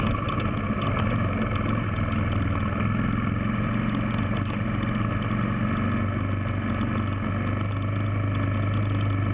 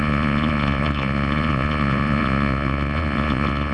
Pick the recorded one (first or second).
first